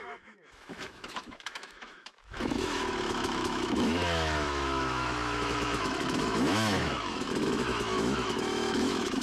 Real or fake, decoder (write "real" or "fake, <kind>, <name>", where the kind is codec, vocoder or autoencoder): fake, autoencoder, DAC-VAE